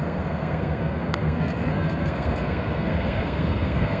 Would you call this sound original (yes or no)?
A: no